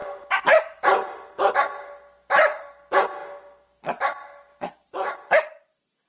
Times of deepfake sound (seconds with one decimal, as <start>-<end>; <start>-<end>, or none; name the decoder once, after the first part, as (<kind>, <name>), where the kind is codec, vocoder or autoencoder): 0.0-0.8 (vocoder, BigVGAN v2); 3.2-6.1